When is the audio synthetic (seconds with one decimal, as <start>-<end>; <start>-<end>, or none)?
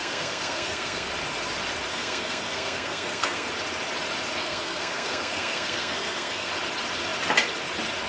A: 0.0-1.1; 1.9-3.5; 4.4-6.5